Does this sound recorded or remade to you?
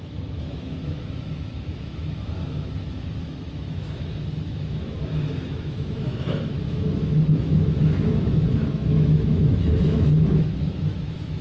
remade